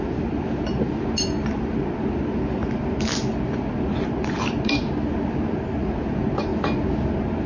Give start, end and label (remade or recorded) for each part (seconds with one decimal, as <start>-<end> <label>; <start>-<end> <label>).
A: 0.0-7.5 recorded